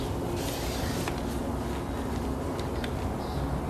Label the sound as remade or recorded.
recorded